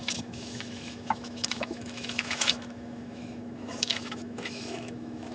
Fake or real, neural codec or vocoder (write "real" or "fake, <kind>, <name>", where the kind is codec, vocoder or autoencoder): fake, autoencoder, DAC-VAE